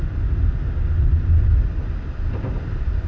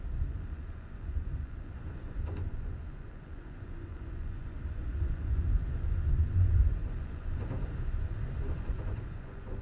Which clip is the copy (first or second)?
second